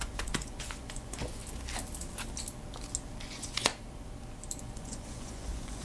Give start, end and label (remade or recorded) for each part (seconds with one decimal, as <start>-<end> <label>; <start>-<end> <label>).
0.0-1.4 remade; 1.4-3.2 recorded; 3.2-3.7 remade; 3.7-4.6 recorded; 4.6-5.8 remade